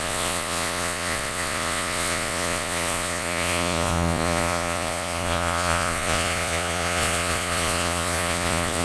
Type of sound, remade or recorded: remade